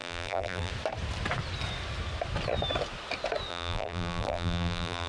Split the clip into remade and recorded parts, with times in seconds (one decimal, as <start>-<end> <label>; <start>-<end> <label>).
0.0-0.7 remade; 0.7-3.5 recorded; 3.5-5.1 remade